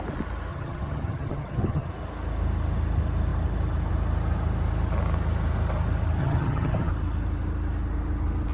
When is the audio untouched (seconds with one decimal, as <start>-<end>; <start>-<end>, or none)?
0.0-0.5; 1.9-6.2; 6.9-8.5